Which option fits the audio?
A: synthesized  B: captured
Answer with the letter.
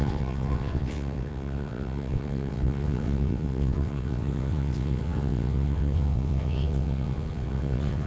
A